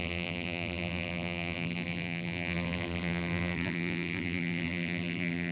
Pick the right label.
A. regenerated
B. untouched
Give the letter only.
A